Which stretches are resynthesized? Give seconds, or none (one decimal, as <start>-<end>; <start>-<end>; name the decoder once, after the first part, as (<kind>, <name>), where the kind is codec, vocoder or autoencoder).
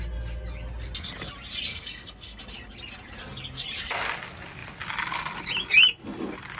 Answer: 1.7-2.4 (codec, SNAC)